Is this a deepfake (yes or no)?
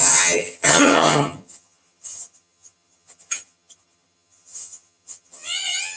yes